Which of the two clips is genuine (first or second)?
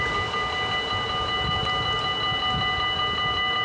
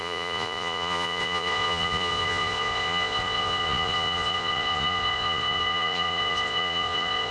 first